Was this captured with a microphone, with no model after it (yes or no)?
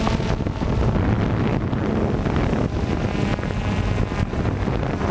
yes